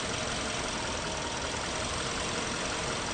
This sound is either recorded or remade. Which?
recorded